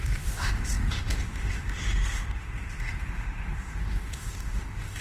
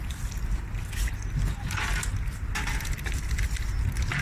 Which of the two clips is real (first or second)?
second